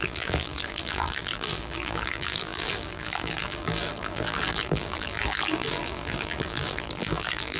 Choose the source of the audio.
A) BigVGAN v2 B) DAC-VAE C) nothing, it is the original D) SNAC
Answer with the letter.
A